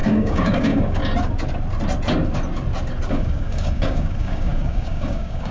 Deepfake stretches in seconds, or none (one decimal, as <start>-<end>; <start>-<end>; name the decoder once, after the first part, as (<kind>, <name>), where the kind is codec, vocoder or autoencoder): 0.0-1.0 (codec, DAC); 3.1-5.5

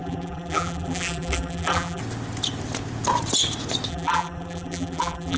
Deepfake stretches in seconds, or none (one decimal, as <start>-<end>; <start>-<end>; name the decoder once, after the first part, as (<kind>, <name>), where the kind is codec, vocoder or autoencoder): 0.0-2.0 (vocoder, BigVGAN v2); 3.9-5.4

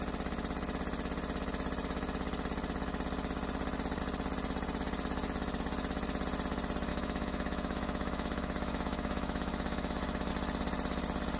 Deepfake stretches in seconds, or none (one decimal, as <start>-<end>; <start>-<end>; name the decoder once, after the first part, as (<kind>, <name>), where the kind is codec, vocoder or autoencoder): 6.9-10.3 (autoencoder, DAC-VAE)

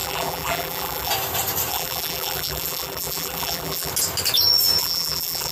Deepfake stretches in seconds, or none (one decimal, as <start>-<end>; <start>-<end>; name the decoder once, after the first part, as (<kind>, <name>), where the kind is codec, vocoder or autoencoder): 0.0-1.1 (vocoder, BigVGAN v2); 1.7-3.9; 4.8-5.5

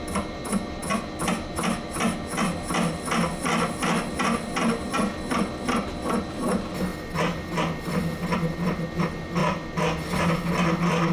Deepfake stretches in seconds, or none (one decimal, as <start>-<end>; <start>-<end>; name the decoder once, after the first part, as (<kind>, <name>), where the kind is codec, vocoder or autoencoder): none